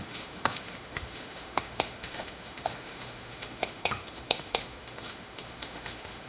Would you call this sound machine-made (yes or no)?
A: yes